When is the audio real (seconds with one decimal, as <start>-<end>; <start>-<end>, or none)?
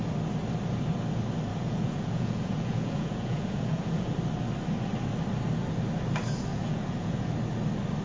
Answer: 0.0-1.5; 4.1-6.5; 7.3-8.0